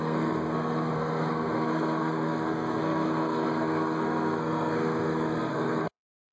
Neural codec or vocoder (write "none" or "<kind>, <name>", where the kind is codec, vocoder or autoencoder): codec, SNAC